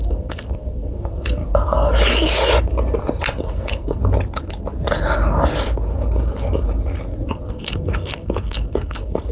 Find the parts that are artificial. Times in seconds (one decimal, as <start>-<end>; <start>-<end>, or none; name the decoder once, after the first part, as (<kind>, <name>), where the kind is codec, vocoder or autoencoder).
0.0-1.4 (codec, SNAC); 3.4-4.0; 7.5-9.3